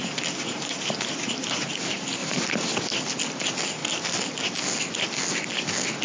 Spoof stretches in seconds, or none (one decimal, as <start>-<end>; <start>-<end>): 0.0-1.3